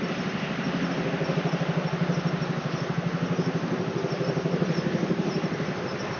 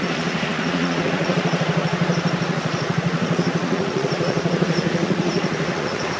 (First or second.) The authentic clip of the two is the first